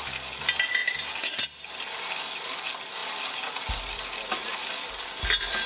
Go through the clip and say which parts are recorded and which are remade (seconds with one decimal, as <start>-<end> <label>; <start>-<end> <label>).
0.0-5.7 recorded